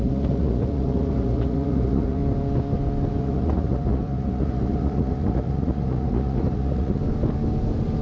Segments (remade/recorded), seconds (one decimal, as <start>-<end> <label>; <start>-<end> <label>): 0.0-2.2 remade; 2.2-3.2 recorded; 3.2-7.0 remade; 7.0-8.0 recorded